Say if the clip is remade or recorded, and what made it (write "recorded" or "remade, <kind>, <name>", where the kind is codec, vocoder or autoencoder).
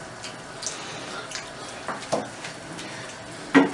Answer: recorded